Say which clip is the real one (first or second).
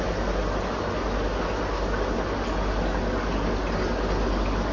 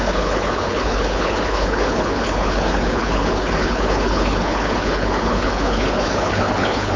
first